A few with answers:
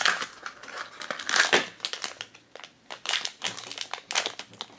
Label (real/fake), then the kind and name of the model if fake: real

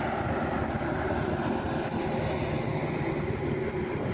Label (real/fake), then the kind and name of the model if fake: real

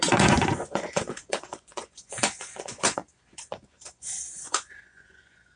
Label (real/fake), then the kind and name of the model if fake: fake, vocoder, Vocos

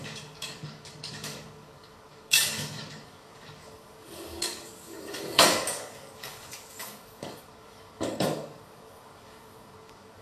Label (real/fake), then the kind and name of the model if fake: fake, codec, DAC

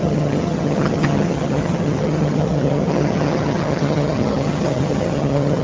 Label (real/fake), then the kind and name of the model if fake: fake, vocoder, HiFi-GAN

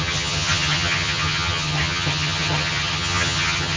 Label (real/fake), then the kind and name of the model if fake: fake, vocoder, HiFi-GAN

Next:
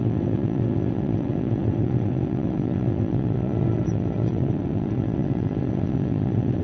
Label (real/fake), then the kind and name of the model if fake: fake, vocoder, WaveNeXt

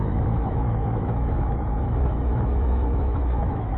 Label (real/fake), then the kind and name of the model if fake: fake, autoencoder, DAC-VAE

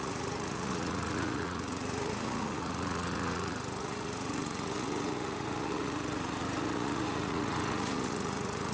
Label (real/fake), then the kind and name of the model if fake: fake, vocoder, Vocos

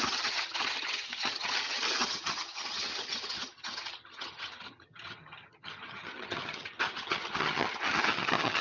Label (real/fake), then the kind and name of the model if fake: fake, vocoder, HiFi-GAN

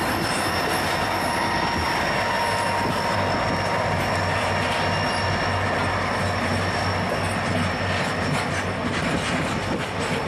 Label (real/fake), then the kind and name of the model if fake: real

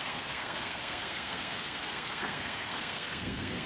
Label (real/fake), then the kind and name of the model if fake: fake, codec, SNAC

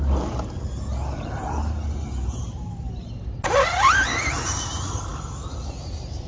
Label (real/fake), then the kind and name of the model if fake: real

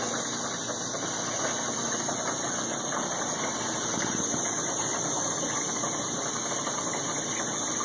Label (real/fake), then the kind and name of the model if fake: real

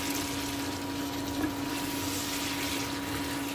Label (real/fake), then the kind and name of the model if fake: real